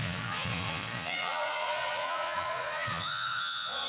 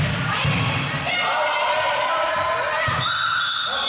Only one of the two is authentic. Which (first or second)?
second